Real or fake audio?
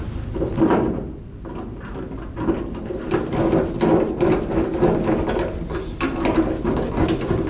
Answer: real